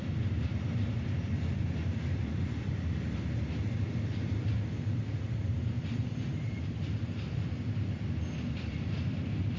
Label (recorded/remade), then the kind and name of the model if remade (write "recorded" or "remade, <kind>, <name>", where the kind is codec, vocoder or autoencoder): remade, vocoder, BigVGAN v2